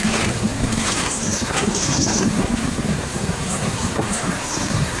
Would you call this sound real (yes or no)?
no